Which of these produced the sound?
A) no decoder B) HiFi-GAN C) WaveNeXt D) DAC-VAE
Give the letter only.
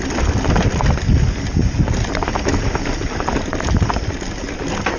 A